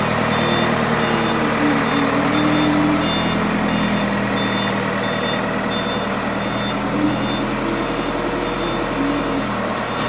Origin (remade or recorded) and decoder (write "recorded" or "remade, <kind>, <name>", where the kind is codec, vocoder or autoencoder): recorded